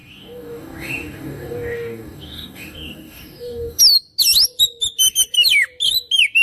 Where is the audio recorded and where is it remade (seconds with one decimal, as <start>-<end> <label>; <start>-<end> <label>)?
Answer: 0.0-3.8 remade; 3.8-6.4 recorded